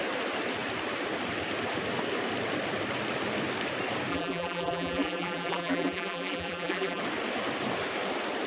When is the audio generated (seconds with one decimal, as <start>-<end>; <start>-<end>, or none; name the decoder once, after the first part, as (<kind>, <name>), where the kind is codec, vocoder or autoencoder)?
4.1-7.0 (vocoder, BigVGAN v2)